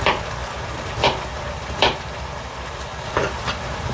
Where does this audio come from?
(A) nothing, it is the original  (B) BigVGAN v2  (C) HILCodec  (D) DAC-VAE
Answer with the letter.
B